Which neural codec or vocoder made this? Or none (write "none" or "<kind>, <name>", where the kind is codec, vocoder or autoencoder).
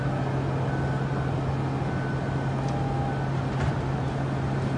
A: none